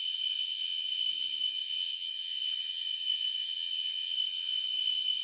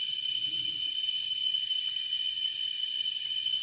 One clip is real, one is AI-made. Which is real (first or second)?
second